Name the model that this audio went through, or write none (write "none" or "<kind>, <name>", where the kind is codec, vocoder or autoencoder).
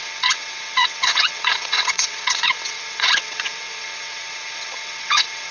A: vocoder, WaveNeXt